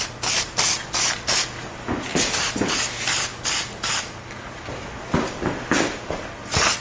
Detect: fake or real real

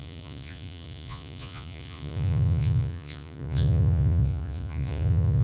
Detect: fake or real fake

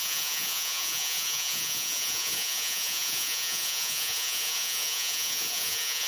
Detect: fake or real fake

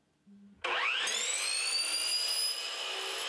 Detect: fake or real real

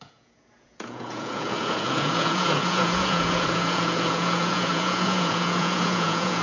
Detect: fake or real fake